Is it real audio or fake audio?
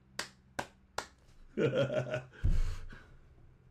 real